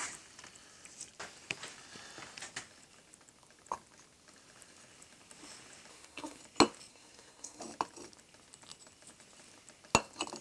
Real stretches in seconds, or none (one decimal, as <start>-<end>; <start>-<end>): 0.0-5.9; 6.4-6.9; 7.6-10.4